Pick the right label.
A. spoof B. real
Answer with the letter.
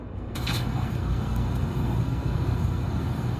A